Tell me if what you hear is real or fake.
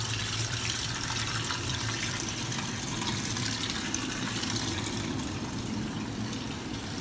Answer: fake